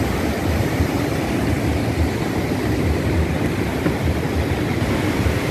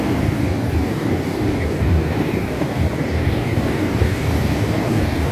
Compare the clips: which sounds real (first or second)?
first